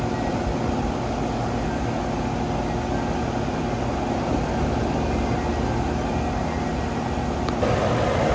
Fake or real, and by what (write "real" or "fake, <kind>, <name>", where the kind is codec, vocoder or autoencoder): real